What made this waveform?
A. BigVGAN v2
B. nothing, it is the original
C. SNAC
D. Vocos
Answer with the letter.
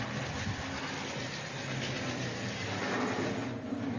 B